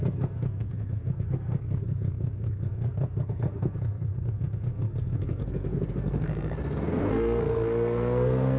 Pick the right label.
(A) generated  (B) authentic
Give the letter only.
A